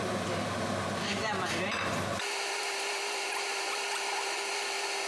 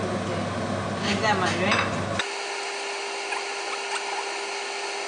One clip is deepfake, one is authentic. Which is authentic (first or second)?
second